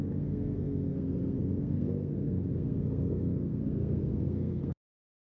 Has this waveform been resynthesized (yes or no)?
yes